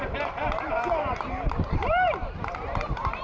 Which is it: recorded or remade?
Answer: remade